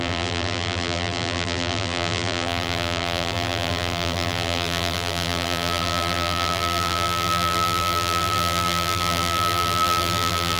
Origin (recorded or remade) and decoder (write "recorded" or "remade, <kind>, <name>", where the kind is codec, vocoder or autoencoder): remade, vocoder, BigVGAN v2